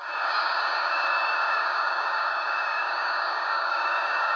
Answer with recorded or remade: remade